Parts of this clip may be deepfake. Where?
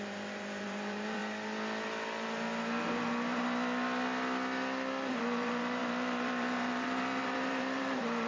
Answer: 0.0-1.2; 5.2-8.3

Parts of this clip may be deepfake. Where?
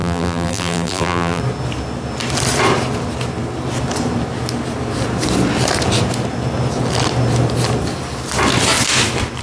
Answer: 0.0-1.4